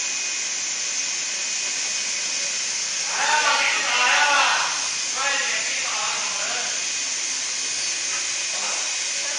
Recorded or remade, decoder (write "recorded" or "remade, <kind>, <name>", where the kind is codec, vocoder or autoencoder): recorded